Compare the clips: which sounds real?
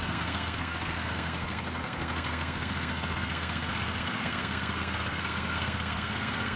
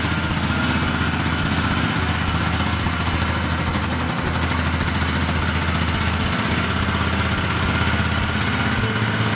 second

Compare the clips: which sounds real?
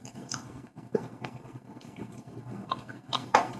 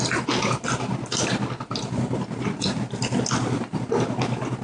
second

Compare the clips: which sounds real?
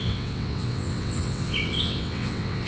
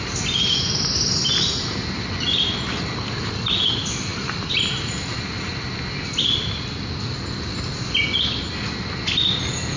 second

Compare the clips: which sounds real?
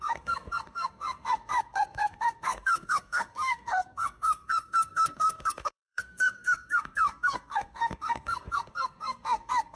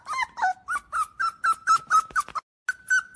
second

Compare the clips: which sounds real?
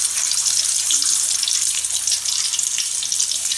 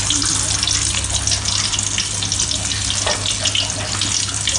second